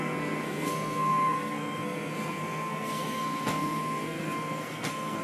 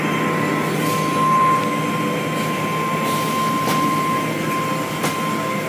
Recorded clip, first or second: second